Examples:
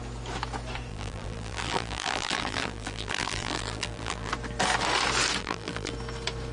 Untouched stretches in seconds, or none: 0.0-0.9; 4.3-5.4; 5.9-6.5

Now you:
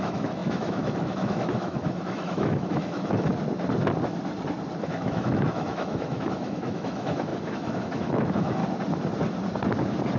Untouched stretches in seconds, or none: 3.3-4.8; 8.6-10.2